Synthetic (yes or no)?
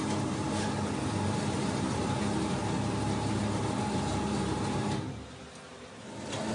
no